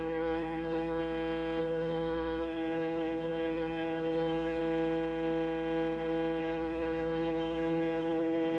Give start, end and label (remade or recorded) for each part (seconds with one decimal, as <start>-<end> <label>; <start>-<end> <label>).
0.0-1.0 remade; 1.0-1.6 recorded; 1.6-4.6 remade; 4.6-6.4 recorded; 6.4-8.6 remade